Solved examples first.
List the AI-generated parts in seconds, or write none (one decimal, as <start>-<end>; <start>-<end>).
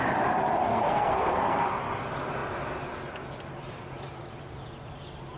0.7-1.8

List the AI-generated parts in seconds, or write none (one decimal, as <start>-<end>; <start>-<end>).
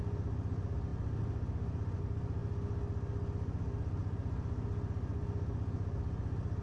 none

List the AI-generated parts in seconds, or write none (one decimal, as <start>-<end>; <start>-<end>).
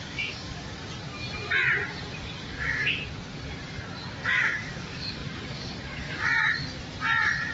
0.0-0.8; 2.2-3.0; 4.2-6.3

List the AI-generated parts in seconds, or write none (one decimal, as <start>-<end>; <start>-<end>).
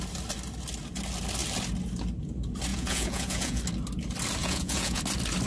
2.7-3.6; 4.4-5.0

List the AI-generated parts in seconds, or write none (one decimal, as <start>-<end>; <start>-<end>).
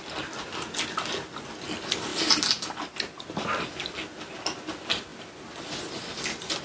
none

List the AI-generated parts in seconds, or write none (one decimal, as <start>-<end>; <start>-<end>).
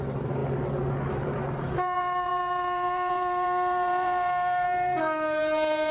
0.0-0.4; 1.1-5.9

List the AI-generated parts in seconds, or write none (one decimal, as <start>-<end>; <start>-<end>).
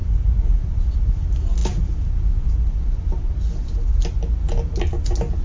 none